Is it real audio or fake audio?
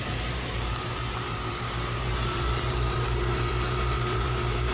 fake